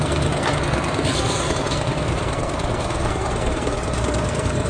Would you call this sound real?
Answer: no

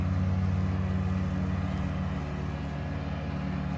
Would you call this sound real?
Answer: yes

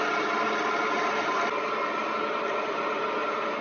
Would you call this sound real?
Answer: yes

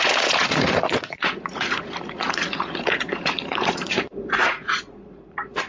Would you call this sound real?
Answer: no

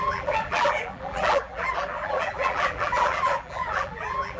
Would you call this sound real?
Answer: no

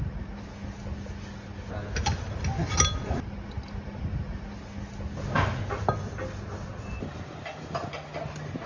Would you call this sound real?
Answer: yes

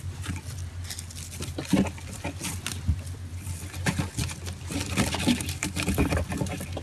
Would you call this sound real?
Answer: yes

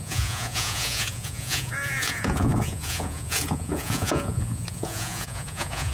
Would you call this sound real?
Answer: no